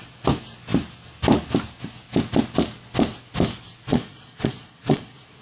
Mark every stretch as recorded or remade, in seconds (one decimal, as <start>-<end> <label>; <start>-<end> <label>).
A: 0.0-3.9 recorded; 3.9-5.4 remade